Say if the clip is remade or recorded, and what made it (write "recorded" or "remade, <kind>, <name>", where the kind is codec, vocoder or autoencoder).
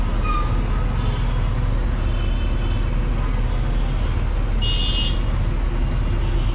recorded